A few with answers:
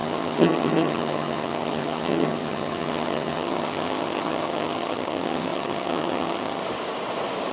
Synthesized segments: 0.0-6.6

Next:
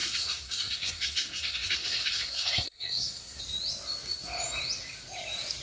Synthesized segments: 0.0-3.4

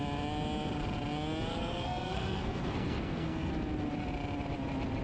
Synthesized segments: 1.5-3.5

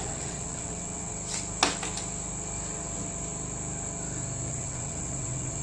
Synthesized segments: 0.0-1.1; 4.5-5.6

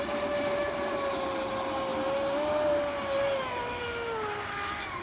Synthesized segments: none